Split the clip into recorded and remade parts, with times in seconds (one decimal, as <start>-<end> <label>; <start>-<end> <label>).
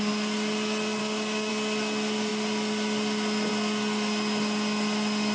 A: 0.0-1.0 recorded; 1.0-1.5 remade; 1.5-5.3 recorded